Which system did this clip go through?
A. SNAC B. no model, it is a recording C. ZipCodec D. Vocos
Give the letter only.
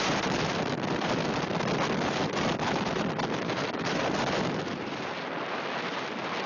B